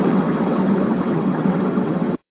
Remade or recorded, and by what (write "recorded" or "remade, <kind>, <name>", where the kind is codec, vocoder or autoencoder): remade, vocoder, WaveNeXt